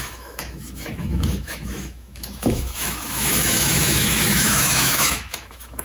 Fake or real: fake